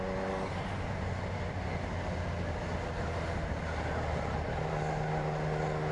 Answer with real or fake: real